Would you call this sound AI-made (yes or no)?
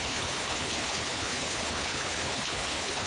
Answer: yes